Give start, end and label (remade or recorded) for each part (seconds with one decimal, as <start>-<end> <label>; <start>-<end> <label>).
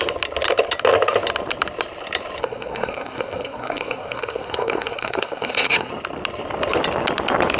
0.0-2.4 recorded; 2.4-5.9 remade; 5.9-7.6 recorded